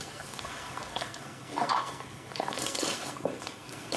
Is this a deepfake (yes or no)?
yes